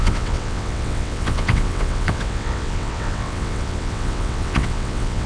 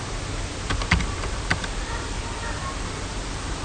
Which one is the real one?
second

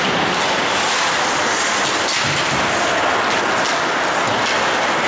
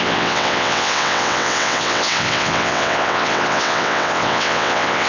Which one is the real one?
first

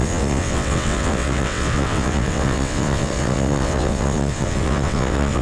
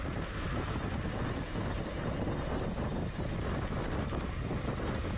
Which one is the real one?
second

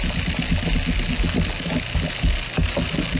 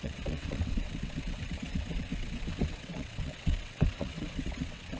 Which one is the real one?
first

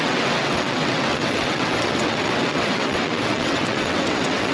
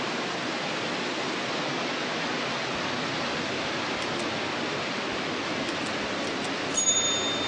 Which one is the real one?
second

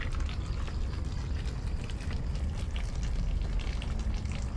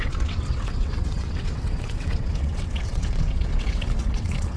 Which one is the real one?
first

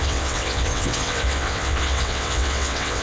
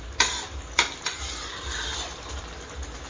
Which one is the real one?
second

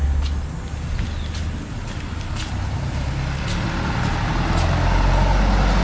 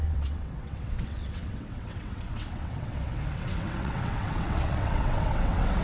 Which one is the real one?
first